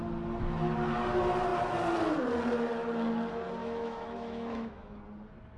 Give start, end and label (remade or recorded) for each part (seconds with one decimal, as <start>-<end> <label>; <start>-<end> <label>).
0.0-3.6 recorded; 3.6-5.0 remade; 5.0-5.6 recorded